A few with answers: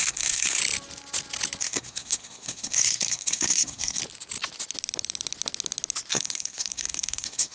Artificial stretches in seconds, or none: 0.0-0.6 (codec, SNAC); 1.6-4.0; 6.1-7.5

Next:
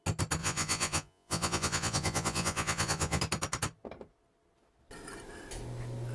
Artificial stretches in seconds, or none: 0.4-3.2 (vocoder, Vocos)

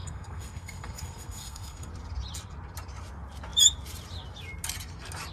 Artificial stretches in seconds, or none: 0.0-1.9 (codec, SNAC)

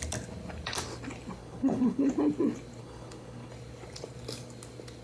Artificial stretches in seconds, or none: 1.4-2.1 (codec, HILCodec); 2.8-3.5

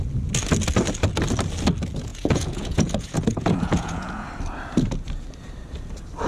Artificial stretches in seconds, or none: 2.1-4.3 (vocoder, Vocos)

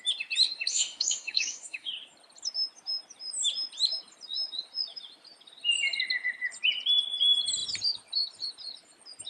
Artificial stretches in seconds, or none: 0.7-1.9 (autoencoder, DAC-VAE)

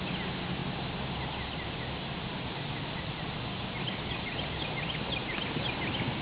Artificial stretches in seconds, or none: none